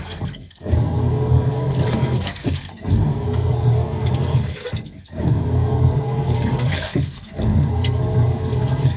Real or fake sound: fake